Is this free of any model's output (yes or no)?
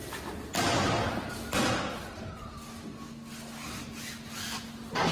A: yes